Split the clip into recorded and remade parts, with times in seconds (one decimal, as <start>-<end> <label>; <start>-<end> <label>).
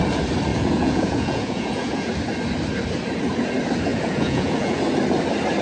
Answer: 0.0-0.5 recorded; 0.5-2.1 remade; 2.1-3.9 recorded; 3.9-4.8 remade; 4.8-5.6 recorded